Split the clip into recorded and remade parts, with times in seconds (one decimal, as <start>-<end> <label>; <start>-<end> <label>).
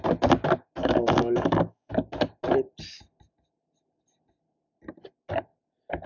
0.0-0.8 recorded; 0.8-1.9 remade; 1.9-6.1 recorded